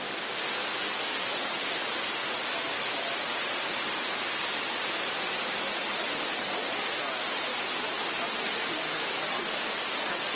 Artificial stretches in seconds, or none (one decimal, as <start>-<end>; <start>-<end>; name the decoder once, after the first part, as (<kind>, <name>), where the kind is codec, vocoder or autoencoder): none